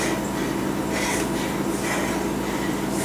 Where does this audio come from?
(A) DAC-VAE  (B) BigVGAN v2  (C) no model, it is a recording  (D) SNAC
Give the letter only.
C